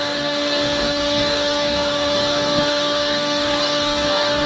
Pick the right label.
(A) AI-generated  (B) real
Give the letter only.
A